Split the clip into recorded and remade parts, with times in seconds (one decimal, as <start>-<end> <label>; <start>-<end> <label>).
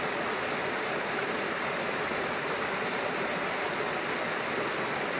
0.0-0.6 recorded; 0.6-3.7 remade; 3.7-5.2 recorded